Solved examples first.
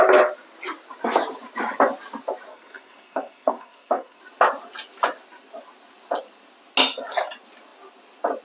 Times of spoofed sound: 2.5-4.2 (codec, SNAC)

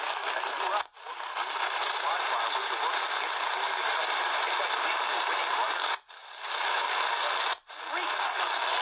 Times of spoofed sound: none

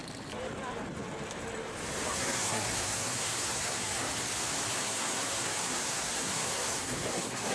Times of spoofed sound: 2.1-4.1 (codec, SNAC); 4.7-7.5

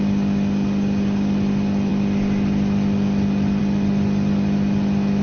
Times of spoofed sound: none